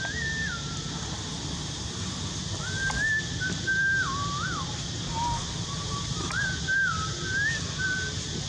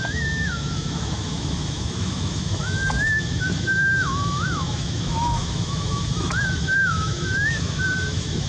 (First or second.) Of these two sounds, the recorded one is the first